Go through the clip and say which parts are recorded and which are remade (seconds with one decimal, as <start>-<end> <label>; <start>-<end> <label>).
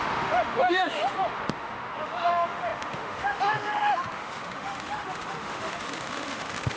0.0-6.8 remade